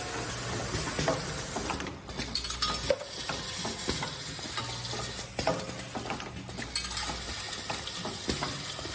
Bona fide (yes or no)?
yes